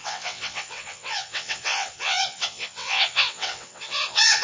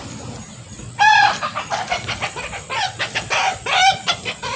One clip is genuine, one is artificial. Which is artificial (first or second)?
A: first